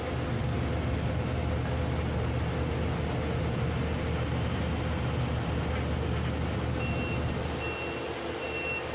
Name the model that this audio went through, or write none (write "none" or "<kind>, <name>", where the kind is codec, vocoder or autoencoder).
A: none